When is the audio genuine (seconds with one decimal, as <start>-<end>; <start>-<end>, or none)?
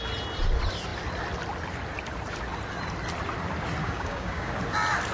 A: 0.0-3.8; 4.5-5.1